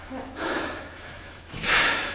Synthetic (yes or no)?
yes